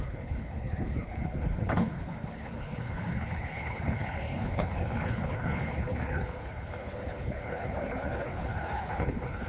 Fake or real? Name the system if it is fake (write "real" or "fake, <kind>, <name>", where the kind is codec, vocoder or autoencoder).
fake, codec, HILCodec